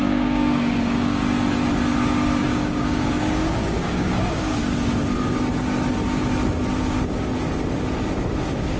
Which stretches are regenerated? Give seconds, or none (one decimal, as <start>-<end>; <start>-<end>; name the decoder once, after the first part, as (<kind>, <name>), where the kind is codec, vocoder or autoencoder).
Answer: 0.0-1.2 (codec, DAC); 2.4-4.6; 8.4-8.8